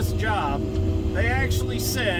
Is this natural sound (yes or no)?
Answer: yes